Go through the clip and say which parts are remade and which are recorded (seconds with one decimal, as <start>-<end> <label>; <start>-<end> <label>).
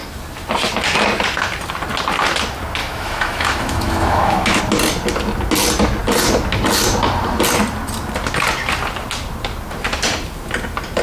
0.0-2.8 recorded; 2.8-4.6 remade; 4.6-11.0 recorded